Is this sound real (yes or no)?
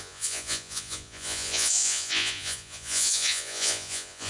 no